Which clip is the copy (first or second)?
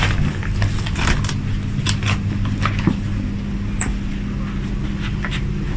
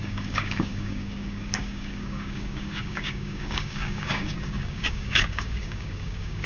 second